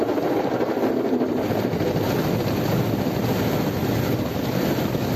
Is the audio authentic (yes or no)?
yes